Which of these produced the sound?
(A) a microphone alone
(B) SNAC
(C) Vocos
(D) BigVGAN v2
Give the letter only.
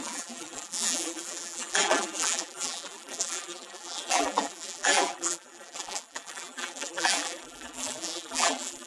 D